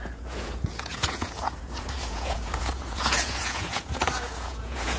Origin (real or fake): fake